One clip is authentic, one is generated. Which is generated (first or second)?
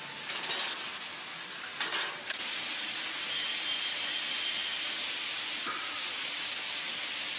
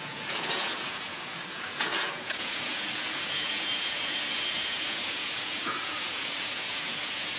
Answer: second